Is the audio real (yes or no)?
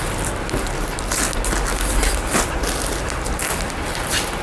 yes